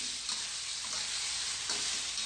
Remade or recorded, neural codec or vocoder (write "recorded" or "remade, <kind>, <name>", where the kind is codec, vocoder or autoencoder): recorded